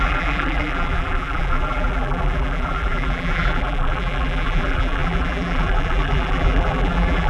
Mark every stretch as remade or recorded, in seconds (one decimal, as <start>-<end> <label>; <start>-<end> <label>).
0.0-7.3 remade